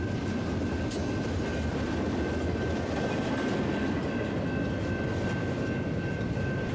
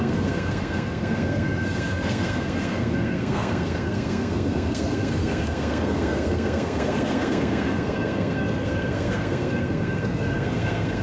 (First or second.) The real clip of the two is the first